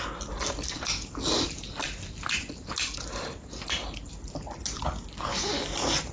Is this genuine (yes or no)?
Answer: yes